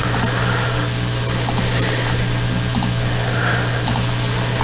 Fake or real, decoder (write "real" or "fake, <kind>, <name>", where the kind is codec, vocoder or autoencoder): real